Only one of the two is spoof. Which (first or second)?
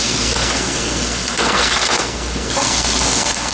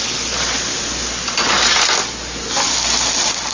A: first